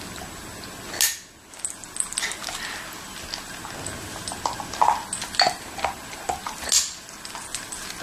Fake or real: real